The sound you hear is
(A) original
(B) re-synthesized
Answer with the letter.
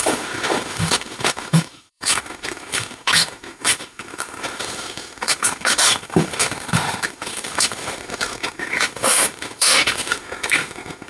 B